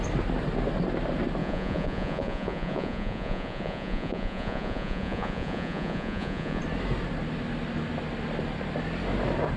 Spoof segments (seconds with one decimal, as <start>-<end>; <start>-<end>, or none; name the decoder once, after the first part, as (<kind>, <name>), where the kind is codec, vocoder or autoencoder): 1.4-6.6 (vocoder, Vocos)